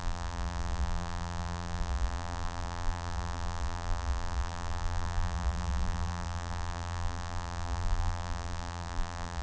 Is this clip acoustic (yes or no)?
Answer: no